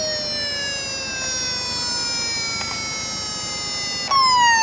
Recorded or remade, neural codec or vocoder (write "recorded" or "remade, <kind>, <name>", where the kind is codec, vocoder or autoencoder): recorded